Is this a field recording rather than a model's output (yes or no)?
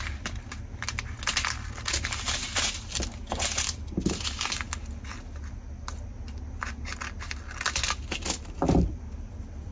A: yes